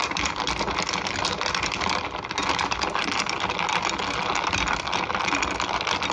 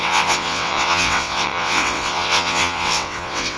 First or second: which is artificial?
second